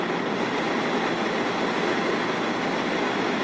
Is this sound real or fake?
real